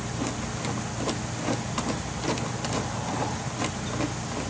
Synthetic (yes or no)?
no